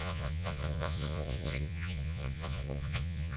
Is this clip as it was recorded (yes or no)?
no